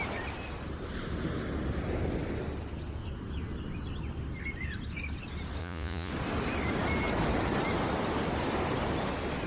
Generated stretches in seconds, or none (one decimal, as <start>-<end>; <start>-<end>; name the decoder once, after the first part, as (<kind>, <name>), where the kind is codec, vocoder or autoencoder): 5.6-6.1 (vocoder, Vocos)